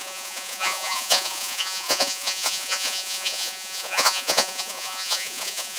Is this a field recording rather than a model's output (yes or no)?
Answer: no